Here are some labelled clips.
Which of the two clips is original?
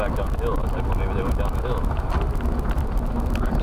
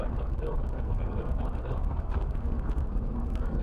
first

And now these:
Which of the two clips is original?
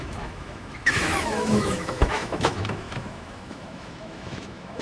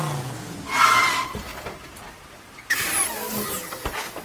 second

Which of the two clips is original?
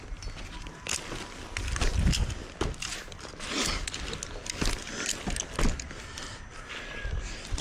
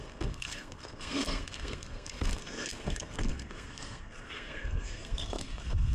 first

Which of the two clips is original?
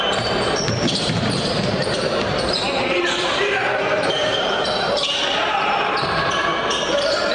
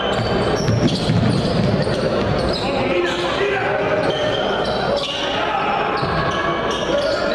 second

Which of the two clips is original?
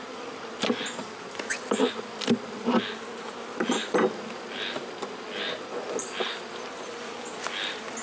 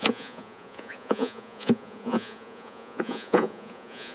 first